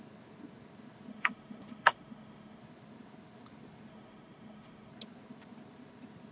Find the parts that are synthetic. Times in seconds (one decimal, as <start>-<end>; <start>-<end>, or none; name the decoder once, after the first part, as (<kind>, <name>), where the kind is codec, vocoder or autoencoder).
1.1-2.6 (autoencoder, DAC-VAE); 3.9-4.9